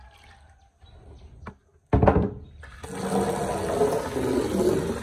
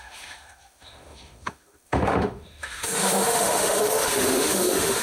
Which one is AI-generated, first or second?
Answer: second